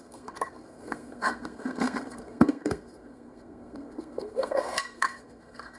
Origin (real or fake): fake